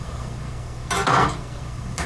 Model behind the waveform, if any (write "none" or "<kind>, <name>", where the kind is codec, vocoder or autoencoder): codec, SNAC